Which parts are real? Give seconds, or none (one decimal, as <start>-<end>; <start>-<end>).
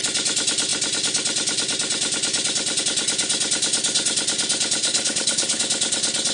0.0-4.8; 5.6-6.3